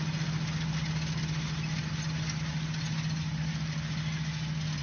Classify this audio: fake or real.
real